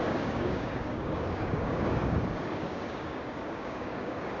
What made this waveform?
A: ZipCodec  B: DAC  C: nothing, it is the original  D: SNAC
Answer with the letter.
B